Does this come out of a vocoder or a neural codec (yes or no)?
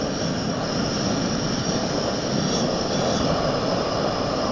no